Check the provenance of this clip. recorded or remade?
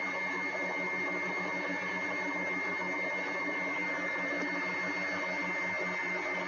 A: recorded